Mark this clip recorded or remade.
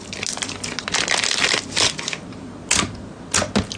recorded